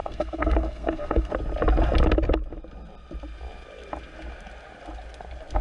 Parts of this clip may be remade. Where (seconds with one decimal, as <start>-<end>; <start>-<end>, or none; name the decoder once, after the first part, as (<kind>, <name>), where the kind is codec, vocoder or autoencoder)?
0.0-1.3 (codec, SNAC)